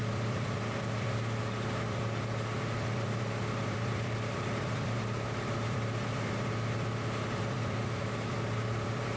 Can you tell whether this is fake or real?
fake